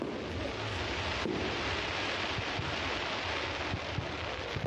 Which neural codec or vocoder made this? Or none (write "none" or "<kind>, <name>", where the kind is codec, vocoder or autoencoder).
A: none